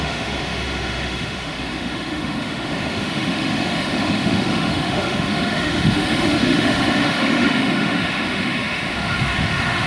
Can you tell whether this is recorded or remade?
remade